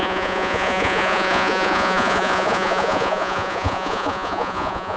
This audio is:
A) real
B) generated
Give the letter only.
B